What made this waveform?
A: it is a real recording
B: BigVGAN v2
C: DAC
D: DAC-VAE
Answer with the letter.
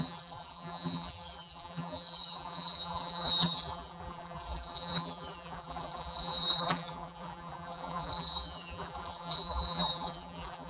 B